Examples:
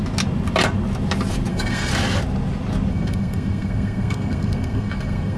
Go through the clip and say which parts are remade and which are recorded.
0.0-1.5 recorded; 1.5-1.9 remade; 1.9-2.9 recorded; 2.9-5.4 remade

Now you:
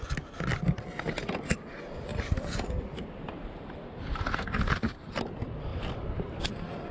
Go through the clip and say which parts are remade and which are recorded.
0.0-2.1 recorded; 2.1-5.2 remade; 5.2-5.7 recorded; 5.7-6.9 remade

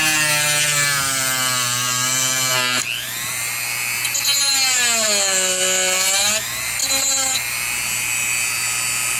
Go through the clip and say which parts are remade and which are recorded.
0.0-9.2 recorded

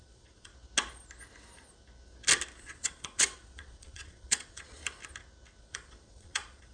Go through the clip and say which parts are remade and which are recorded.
0.0-0.5 remade; 0.5-2.6 recorded; 2.6-4.8 remade; 4.8-5.6 recorded; 5.6-6.7 remade

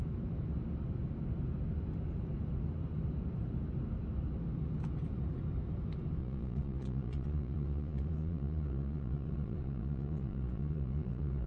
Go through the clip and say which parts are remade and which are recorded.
0.0-6.2 recorded; 6.2-11.5 remade

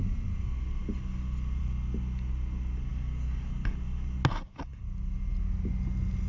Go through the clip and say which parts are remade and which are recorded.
0.0-6.3 recorded

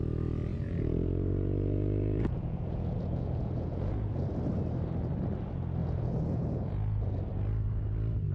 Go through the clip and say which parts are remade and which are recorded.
0.0-0.5 recorded; 0.5-4.3 remade; 4.3-5.8 recorded; 5.8-6.7 remade; 6.7-8.3 recorded